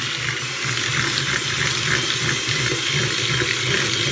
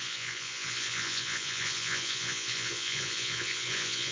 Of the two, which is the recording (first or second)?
first